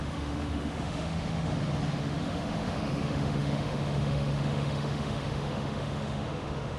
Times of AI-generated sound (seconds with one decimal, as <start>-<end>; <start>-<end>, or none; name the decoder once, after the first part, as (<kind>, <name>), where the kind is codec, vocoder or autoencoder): 0.0-1.5 (autoencoder, DAC-VAE); 2.0-6.8